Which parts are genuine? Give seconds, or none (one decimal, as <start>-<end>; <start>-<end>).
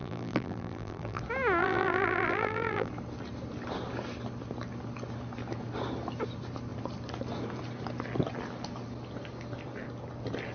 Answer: 1.2-1.6; 2.9-10.5